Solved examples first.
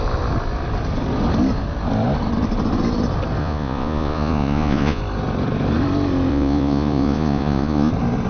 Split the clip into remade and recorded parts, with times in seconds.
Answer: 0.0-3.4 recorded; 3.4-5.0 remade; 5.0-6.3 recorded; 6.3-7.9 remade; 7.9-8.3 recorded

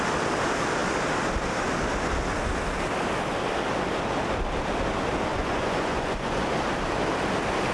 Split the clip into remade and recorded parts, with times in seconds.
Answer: 0.0-5.3 recorded; 5.3-6.5 remade; 6.5-7.7 recorded

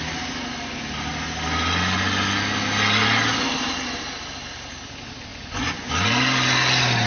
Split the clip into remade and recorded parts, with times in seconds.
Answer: 0.0-5.3 recorded; 5.3-5.9 remade; 5.9-7.1 recorded

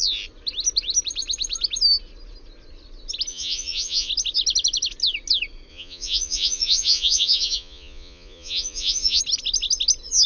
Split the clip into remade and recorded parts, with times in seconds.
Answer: 0.0-3.3 recorded; 3.3-4.1 remade; 4.1-5.7 recorded; 5.7-9.2 remade; 9.2-10.3 recorded